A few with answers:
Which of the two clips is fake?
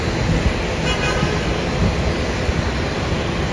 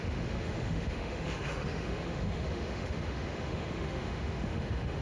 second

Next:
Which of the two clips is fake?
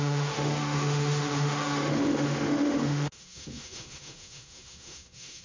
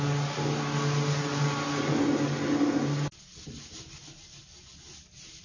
first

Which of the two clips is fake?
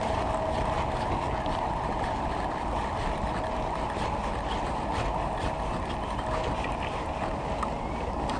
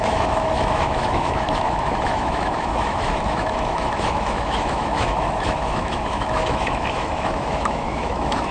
second